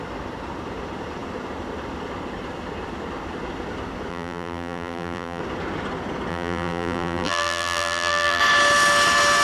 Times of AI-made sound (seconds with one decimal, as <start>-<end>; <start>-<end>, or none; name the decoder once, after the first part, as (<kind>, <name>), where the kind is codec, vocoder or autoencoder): 4.1-5.4 (vocoder, BigVGAN v2); 6.3-8.4